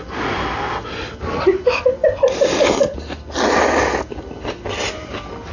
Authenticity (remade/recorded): recorded